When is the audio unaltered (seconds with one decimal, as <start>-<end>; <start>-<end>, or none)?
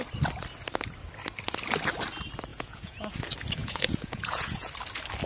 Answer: 0.0-2.5; 3.0-3.6; 4.7-5.3